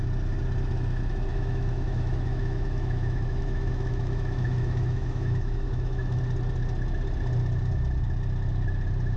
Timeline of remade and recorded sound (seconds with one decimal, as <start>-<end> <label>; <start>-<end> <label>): 0.0-1.3 recorded; 1.3-6.2 remade; 6.2-9.2 recorded